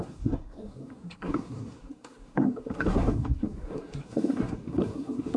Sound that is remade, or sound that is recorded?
remade